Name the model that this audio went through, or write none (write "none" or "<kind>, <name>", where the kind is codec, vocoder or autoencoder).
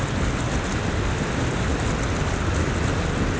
none